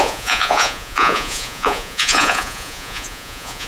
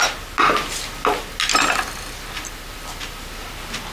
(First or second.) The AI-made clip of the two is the first